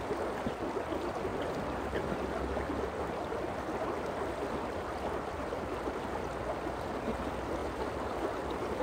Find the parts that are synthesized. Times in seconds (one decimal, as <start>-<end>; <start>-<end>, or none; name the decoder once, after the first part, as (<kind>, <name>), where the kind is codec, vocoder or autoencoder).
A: 1.3-2.7 (vocoder, BigVGAN v2); 7.6-8.8